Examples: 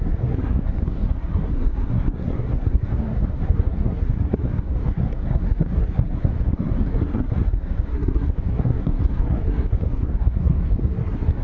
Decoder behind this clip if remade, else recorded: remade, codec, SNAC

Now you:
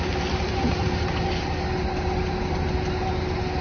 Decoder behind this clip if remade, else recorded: recorded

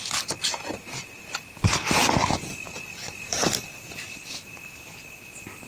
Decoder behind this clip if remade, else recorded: recorded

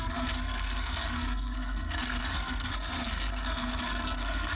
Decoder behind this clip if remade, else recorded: remade, codec, SNAC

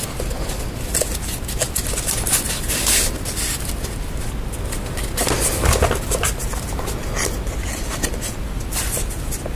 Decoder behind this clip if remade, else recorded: recorded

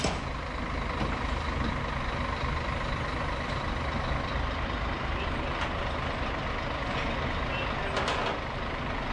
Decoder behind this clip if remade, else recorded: recorded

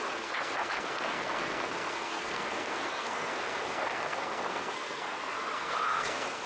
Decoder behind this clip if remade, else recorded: remade, codec, SNAC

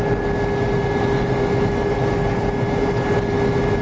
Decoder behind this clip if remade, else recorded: recorded